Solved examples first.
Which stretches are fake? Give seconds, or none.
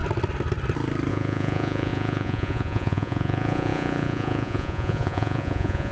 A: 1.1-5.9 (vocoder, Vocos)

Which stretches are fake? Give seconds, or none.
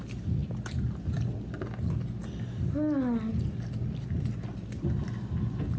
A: none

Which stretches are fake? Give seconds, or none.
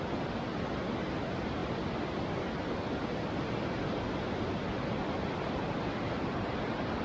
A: none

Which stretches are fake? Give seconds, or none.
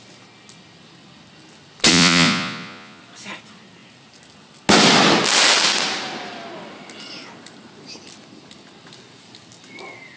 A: 1.9-3.0 (vocoder, Vocos)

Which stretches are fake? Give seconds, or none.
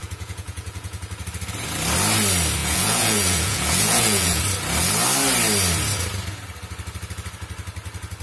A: 0.0-1.0 (vocoder, Vocos); 2.6-4.4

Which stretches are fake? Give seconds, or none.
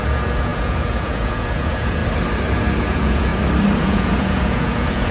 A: 0.0-2.0 (vocoder, Vocos); 2.8-3.3; 3.8-5.1